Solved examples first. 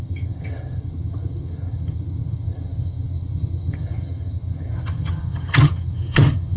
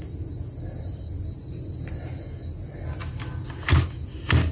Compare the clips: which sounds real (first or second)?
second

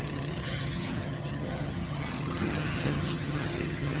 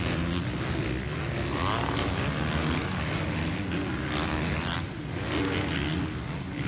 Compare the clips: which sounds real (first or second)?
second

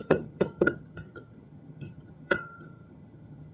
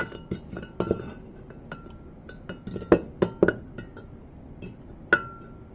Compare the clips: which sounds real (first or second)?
second